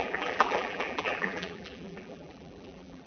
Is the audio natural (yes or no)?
no